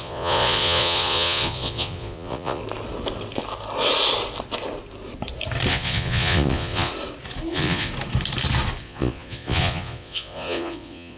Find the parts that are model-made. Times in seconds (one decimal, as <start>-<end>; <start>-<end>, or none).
0.0-2.6; 5.7-6.9; 7.5-7.9; 8.8-11.2